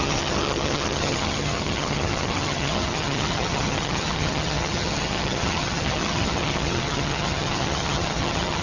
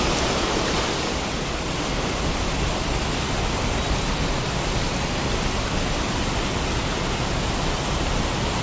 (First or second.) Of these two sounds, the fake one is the first